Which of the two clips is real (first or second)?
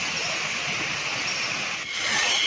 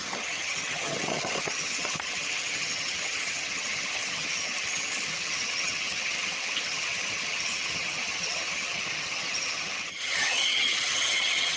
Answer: first